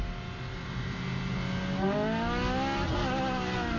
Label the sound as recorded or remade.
recorded